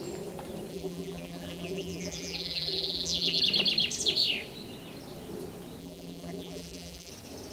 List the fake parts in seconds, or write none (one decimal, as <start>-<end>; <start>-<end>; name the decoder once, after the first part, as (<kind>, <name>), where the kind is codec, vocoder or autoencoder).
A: 0.7-3.4 (vocoder, BigVGAN v2); 5.8-7.1